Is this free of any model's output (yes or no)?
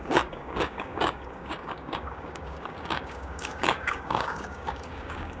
no